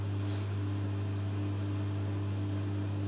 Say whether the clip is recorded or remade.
recorded